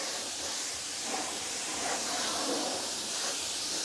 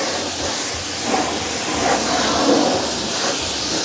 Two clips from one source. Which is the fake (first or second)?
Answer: first